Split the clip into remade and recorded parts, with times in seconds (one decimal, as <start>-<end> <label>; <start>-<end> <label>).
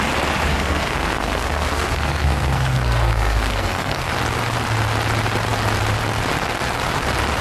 0.0-0.5 recorded; 0.5-4.1 remade; 4.1-7.4 recorded